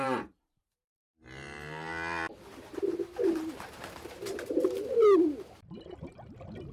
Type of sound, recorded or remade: remade